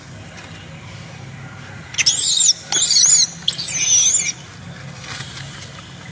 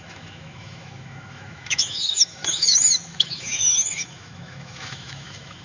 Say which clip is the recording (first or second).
first